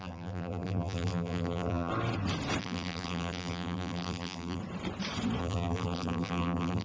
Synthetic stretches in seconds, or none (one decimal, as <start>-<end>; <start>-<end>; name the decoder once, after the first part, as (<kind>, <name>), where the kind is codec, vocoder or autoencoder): 0.0-1.9 (vocoder, BigVGAN v2); 2.6-4.6; 5.4-6.8